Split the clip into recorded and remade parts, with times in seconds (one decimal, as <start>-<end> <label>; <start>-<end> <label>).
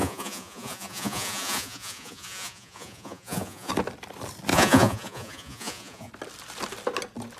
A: 0.0-3.7 remade; 3.7-4.5 recorded; 4.5-6.1 remade; 6.1-7.4 recorded